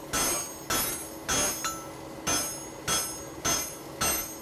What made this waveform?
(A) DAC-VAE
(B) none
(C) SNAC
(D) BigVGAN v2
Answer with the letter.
B